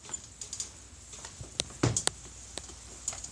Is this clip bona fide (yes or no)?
yes